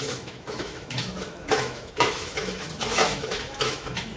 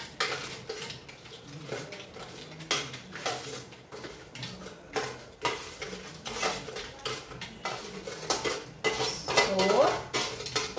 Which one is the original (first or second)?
second